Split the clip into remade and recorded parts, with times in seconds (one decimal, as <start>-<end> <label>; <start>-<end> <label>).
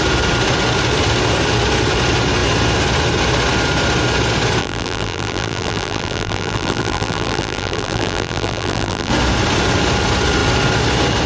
0.0-4.6 recorded; 4.6-9.1 remade; 9.1-11.3 recorded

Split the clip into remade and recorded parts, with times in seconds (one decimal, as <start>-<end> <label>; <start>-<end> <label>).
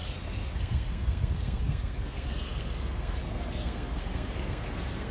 0.0-5.1 remade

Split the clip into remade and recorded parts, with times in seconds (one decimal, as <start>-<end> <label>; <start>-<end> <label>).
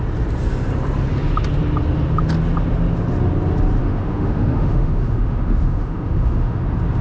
0.0-3.8 recorded; 3.8-6.6 remade; 6.6-7.0 recorded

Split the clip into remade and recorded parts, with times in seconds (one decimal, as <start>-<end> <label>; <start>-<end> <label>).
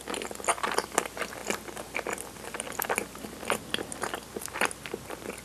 0.0-5.4 recorded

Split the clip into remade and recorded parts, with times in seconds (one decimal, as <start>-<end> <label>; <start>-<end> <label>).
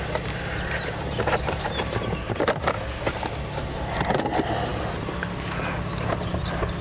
0.0-6.8 recorded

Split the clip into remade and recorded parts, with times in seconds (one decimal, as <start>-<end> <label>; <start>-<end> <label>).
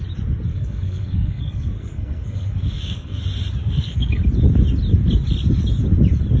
0.0-0.5 recorded; 0.5-3.2 remade; 3.2-3.6 recorded; 3.6-4.2 remade; 4.2-6.4 recorded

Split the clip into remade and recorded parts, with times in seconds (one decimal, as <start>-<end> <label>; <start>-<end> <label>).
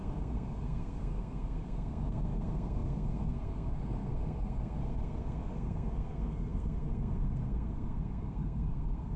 0.0-9.2 remade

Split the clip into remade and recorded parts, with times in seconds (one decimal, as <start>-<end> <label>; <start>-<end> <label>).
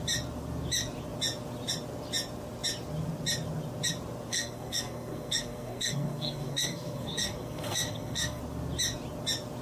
0.0-4.3 recorded; 4.3-8.4 remade; 8.4-9.6 recorded